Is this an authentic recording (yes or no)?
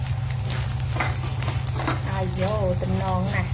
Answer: yes